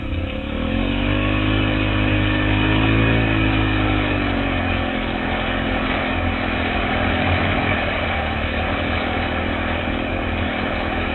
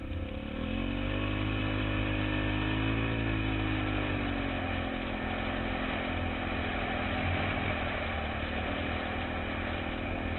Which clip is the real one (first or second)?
second